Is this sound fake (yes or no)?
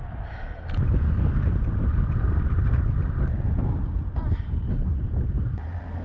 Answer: no